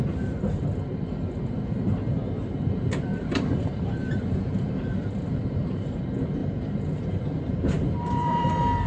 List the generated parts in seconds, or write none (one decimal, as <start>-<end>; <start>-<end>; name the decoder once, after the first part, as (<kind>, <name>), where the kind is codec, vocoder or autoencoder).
3.1-6.0 (vocoder, BigVGAN v2); 6.4-8.5